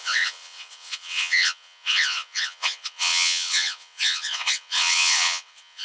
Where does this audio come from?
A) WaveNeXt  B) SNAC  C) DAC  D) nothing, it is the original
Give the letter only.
A